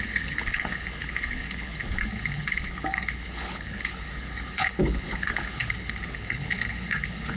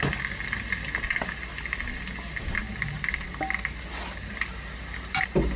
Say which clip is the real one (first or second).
second